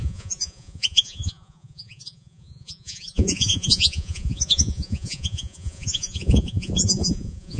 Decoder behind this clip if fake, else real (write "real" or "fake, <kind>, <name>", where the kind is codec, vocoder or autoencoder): fake, vocoder, Vocos